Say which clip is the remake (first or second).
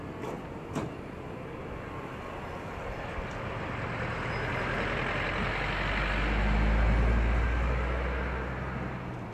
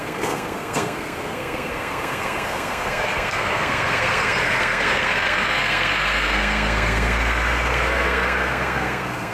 second